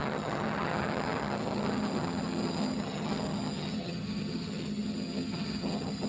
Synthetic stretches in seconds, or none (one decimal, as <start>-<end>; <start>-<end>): 0.0-6.1